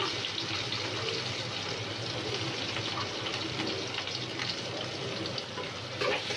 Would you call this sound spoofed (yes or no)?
no